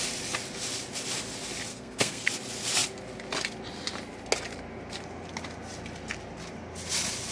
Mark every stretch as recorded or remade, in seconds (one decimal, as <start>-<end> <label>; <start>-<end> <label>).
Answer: 0.0-1.7 recorded; 1.7-2.3 remade; 2.3-7.3 recorded